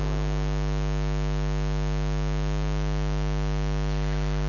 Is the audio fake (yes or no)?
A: no